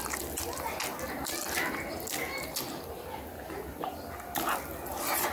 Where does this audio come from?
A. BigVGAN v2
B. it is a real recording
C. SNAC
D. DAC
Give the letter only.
B